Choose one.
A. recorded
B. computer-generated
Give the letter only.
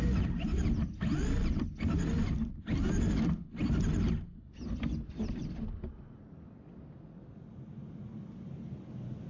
A